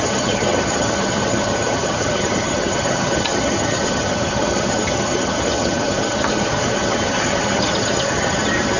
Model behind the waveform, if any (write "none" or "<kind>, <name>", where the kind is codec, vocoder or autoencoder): vocoder, HiFi-GAN